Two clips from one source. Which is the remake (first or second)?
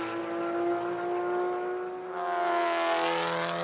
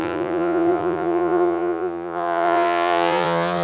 second